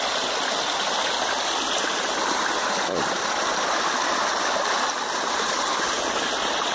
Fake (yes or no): no